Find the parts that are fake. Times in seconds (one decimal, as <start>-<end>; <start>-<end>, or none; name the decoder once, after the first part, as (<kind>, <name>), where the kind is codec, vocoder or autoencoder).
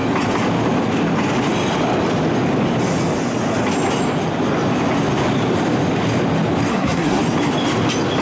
6.7-7.2 (codec, SNAC)